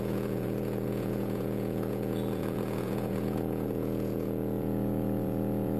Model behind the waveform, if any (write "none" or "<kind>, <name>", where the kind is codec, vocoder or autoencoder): vocoder, Vocos